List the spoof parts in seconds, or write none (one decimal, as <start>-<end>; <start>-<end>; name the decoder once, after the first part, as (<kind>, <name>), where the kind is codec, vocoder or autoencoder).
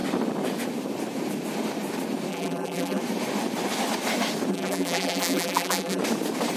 2.3-3.0 (vocoder, BigVGAN v2); 4.5-6.0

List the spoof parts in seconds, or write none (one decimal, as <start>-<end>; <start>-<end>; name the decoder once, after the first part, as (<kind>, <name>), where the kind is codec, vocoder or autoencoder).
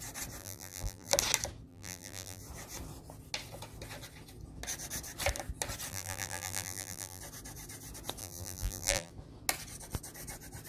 0.4-1.1 (vocoder, BigVGAN v2); 1.7-2.4; 5.9-7.2; 8.2-9.1